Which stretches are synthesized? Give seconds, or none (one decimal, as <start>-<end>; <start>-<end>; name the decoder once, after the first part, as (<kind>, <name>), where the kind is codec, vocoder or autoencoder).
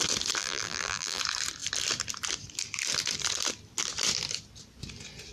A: 0.4-1.2 (vocoder, BigVGAN v2)